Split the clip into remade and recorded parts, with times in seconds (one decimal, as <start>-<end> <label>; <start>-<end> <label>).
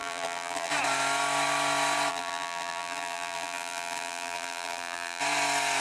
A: 0.0-0.7 remade; 0.7-2.1 recorded; 2.1-5.2 remade; 5.2-5.8 recorded